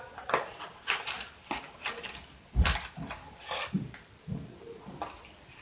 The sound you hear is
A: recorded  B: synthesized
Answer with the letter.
A